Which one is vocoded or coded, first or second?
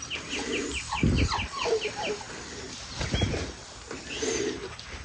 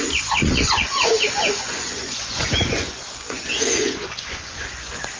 second